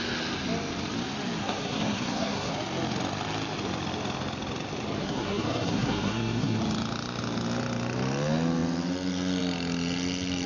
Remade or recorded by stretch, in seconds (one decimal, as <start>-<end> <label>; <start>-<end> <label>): 0.0-1.4 recorded; 1.4-2.5 remade; 2.5-5.0 recorded; 5.0-6.6 remade; 6.6-10.5 recorded